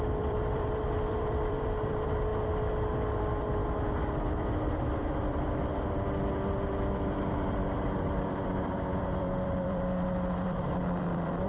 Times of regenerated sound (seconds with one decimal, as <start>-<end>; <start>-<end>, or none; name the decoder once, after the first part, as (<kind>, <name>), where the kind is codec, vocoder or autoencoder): 0.0-2.3 (vocoder, BigVGAN v2); 3.2-3.6; 4.4-11.5